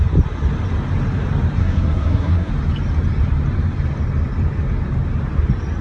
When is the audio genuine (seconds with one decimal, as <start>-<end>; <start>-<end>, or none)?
0.0-1.6; 2.5-5.8